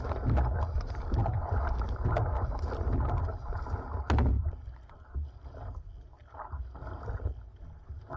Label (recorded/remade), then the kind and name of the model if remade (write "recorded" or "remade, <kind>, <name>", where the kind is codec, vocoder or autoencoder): recorded